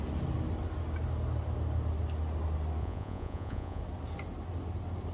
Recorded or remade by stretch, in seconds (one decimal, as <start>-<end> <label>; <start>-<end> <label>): 0.0-2.8 recorded; 2.8-3.8 remade; 3.8-5.1 recorded